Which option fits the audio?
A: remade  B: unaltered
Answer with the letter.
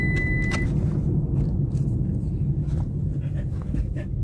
B